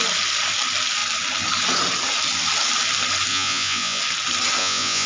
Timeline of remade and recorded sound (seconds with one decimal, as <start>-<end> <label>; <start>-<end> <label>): 0.0-3.3 recorded; 3.3-4.0 remade; 4.0-4.6 recorded; 4.6-5.1 remade